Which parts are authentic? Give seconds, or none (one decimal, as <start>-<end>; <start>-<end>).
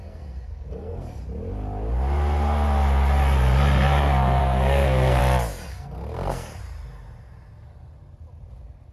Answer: 1.2-4.4; 5.2-5.7; 6.6-8.9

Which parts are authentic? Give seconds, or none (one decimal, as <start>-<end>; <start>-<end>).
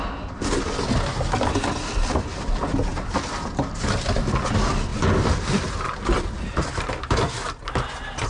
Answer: 0.0-8.3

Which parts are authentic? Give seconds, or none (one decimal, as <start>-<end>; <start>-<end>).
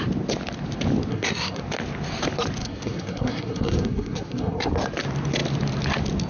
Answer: 0.0-1.1; 1.6-2.6; 4.7-6.3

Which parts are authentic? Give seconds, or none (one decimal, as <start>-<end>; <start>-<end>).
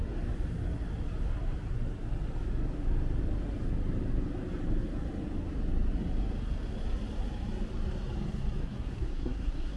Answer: 0.0-8.6